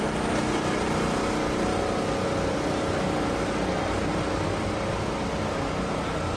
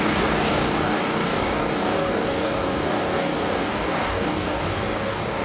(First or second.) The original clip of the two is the first